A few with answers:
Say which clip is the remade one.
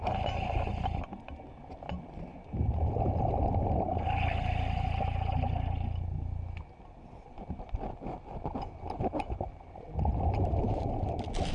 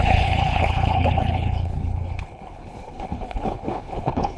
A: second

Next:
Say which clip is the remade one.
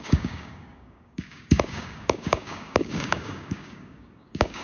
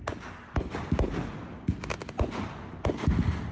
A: first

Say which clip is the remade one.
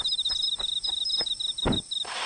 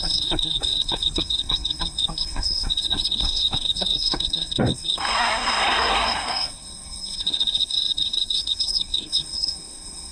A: second